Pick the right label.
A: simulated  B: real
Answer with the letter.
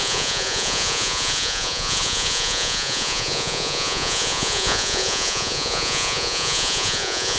A